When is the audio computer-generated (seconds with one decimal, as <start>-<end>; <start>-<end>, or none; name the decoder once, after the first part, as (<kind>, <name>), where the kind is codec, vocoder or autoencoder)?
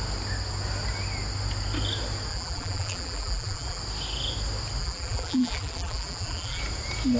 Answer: 2.3-3.8 (vocoder, BigVGAN v2); 4.8-6.6